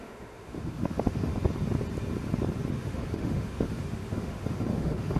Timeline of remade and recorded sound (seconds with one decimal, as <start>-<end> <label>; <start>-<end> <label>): 0.0-1.3 remade; 1.3-2.7 recorded; 2.7-5.2 remade